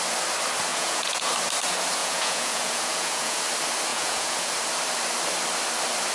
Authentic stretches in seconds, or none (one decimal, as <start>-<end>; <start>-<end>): 0.0-0.7; 1.3-2.0; 3.4-3.9; 4.5-6.1